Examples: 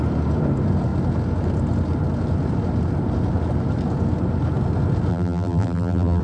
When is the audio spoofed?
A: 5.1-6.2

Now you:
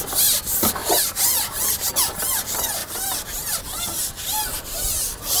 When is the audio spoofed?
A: 2.8-3.6; 4.5-5.4